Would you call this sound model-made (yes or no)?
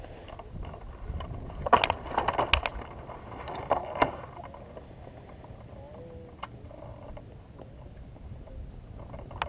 no